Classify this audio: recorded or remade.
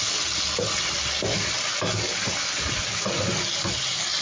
recorded